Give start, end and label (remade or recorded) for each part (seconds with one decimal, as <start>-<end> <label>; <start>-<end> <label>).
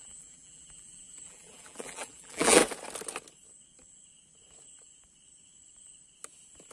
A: 0.0-2.6 remade; 2.6-6.7 recorded